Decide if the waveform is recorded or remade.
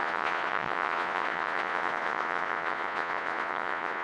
remade